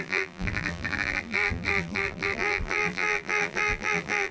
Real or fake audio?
fake